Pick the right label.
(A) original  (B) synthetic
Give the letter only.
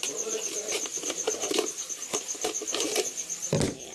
A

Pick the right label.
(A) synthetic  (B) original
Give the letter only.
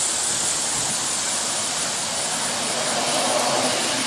A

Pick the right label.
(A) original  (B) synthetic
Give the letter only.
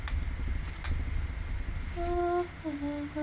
A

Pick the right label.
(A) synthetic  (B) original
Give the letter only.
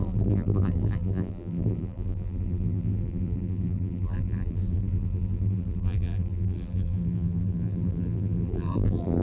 A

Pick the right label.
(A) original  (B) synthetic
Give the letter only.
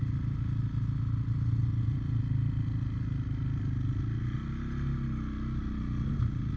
A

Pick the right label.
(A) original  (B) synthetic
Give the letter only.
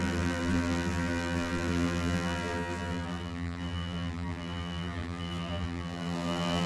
B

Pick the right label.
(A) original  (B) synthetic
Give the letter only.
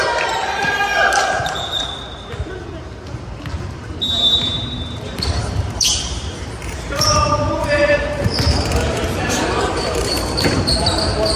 B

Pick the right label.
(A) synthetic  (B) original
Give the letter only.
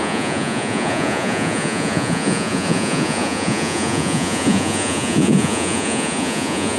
A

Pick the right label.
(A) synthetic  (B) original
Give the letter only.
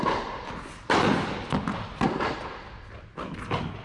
B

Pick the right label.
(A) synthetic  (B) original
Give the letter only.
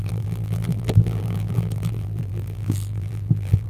A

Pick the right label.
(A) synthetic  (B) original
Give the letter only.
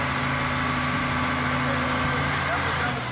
B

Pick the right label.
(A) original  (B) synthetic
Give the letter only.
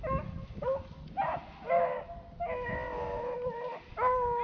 A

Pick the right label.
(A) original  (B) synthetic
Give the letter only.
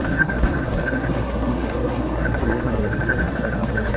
B